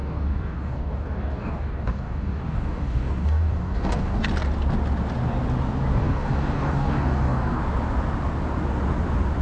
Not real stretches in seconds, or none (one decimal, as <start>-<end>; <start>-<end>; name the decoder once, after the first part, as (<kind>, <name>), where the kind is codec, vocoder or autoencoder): 0.0-4.2 (codec, DAC); 6.0-7.6